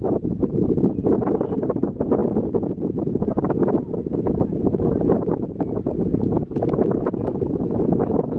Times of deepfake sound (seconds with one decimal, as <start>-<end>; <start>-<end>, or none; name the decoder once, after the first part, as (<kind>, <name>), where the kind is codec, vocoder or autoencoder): 0.0-8.4 (vocoder, BigVGAN v2)